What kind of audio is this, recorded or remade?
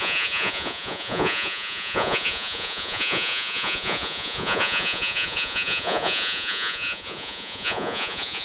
remade